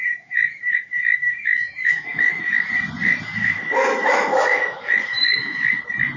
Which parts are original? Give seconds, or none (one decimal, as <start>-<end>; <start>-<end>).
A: 2.7-3.3; 5.8-6.2